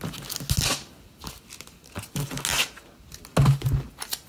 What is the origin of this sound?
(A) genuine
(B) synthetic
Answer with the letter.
A